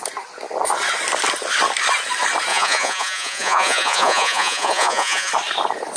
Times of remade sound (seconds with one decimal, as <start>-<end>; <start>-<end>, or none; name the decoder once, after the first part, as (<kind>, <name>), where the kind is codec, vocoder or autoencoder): 2.5-5.3 (vocoder, Vocos)